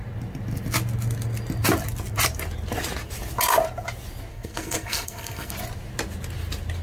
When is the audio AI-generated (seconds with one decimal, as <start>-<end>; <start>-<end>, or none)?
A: 4.3-5.5